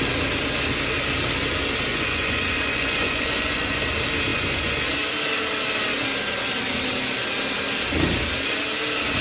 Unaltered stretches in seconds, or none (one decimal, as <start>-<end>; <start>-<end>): 0.0-1.9; 3.8-4.3; 4.8-9.2